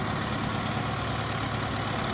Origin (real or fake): real